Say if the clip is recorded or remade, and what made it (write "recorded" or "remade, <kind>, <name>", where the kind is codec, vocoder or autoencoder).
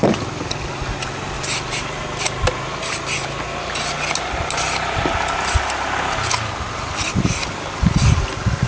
recorded